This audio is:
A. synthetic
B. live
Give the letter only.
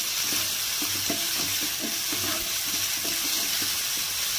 B